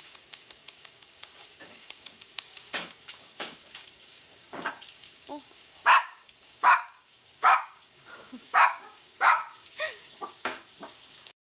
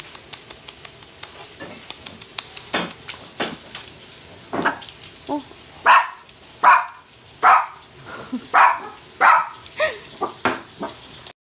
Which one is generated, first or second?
first